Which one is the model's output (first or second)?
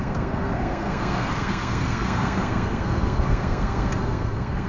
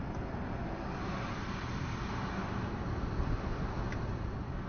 first